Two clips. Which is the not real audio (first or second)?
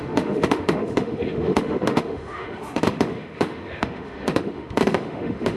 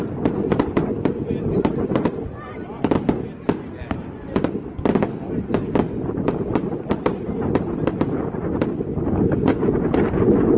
first